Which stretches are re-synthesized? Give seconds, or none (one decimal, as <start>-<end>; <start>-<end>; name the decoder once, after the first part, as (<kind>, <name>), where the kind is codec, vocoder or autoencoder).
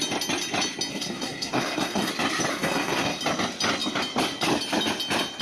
0.9-2.1 (codec, SNAC); 2.5-3.2